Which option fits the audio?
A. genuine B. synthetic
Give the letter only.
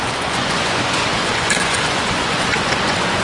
B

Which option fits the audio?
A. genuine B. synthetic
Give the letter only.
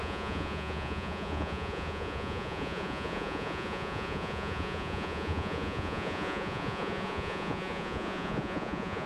B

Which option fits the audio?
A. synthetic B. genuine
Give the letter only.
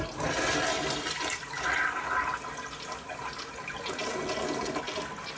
B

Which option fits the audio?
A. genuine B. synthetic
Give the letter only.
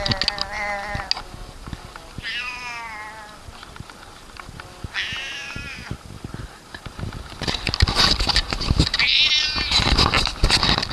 A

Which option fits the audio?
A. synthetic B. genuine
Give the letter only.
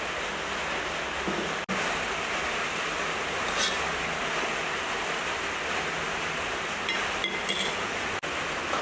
B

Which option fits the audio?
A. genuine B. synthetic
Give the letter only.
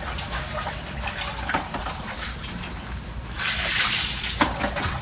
A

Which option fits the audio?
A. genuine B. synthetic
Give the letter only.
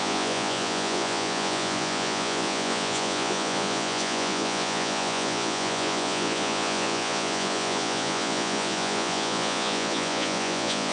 B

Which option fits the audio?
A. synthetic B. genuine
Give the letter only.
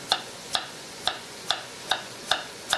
A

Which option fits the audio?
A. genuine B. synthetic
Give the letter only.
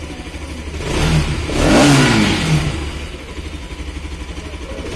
A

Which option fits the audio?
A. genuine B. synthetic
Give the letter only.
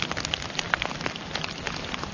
A